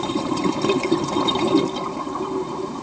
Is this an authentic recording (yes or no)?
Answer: no